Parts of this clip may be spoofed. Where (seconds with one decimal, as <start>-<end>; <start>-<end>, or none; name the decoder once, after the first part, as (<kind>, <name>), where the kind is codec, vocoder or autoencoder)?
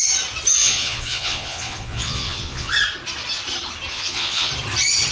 0.6-2.7 (vocoder, Vocos); 3.9-4.5